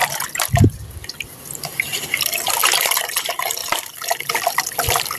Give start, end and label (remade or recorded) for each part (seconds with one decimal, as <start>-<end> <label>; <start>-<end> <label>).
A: 0.0-3.6 recorded; 3.6-4.2 remade; 4.2-5.2 recorded